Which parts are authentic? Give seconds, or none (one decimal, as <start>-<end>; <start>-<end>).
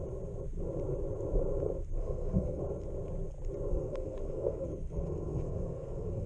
0.0-2.0; 2.6-3.7